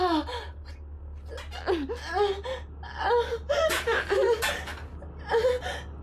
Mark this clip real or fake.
real